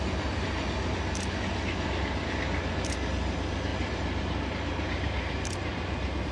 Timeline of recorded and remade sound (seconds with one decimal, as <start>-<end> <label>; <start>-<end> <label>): 0.0-3.7 recorded; 3.7-6.3 remade